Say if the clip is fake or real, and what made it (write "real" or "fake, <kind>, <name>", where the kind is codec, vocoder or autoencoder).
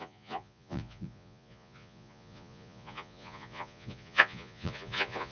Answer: fake, vocoder, Vocos